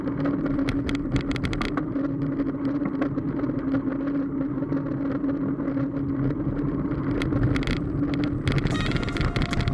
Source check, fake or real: real